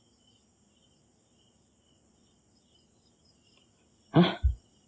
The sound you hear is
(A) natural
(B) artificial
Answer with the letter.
A